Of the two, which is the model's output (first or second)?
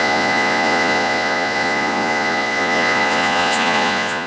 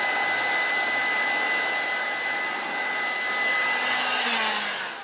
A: first